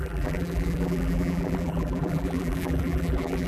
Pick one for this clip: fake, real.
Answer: fake